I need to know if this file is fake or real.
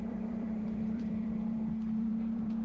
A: fake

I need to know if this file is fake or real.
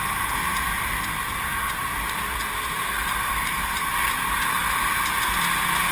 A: real